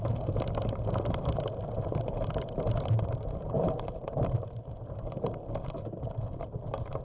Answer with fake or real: real